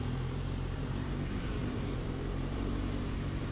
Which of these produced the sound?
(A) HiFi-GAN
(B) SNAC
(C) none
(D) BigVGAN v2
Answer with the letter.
D